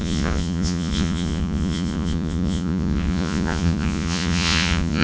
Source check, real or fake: fake